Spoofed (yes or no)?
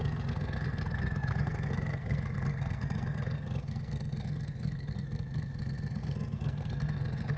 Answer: yes